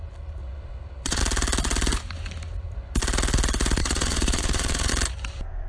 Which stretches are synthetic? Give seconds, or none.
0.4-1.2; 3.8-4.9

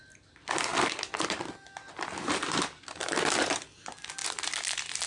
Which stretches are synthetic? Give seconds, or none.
none

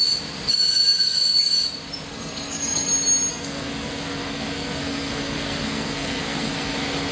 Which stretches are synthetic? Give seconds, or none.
2.1-2.9; 3.3-7.1

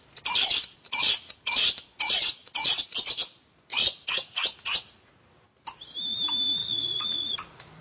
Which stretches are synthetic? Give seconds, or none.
0.6-2.7; 3.7-5.1; 6.6-7.8

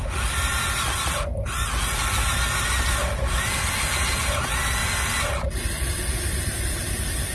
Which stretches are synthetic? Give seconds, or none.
none

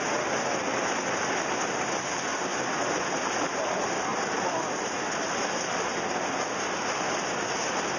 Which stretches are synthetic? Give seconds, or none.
none

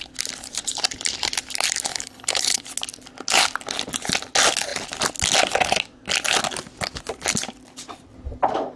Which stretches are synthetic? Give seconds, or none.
1.9-2.6